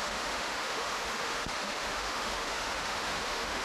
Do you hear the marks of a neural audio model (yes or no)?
yes